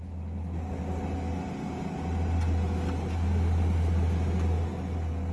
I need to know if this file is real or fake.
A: real